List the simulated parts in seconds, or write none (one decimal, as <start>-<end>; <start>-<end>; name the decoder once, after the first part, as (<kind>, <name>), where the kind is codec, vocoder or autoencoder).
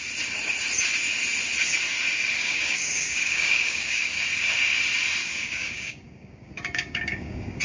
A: 2.4-4.2 (codec, DAC); 5.2-7.6